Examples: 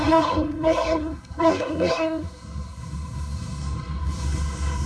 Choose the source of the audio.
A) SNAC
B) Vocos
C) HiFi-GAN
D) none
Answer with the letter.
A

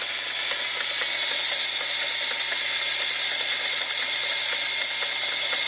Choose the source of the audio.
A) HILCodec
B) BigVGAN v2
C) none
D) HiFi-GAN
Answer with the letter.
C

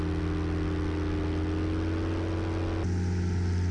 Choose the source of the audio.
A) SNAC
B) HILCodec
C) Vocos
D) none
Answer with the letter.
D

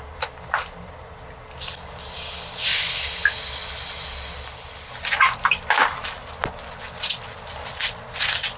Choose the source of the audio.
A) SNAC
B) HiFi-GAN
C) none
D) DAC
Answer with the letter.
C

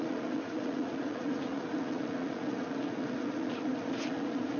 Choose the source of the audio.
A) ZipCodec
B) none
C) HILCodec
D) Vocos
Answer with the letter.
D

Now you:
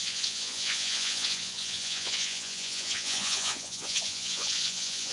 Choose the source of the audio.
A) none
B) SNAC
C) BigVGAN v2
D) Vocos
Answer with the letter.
D